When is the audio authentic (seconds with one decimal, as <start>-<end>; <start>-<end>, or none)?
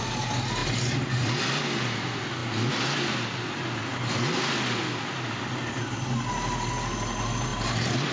0.0-8.1